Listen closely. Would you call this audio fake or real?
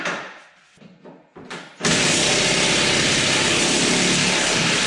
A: real